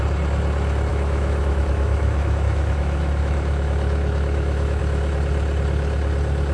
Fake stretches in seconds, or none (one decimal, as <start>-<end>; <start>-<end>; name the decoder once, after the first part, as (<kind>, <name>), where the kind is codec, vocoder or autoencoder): 0.9-4.8 (autoencoder, DAC-VAE)